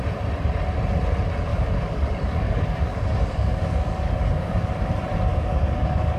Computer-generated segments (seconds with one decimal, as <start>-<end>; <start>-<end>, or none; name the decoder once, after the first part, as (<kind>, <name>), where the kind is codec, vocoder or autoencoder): 1.5-4.7 (codec, DAC); 5.3-6.2